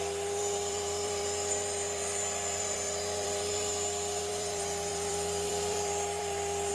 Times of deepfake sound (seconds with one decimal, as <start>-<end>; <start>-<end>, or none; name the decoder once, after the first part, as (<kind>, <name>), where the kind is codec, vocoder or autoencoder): 0.0-3.7 (vocoder, BigVGAN v2); 4.2-6.7